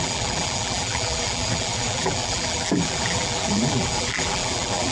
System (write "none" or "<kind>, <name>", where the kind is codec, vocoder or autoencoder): vocoder, BigVGAN v2